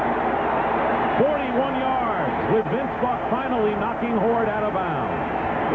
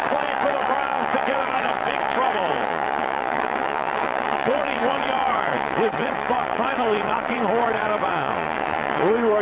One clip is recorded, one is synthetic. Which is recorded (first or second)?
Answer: first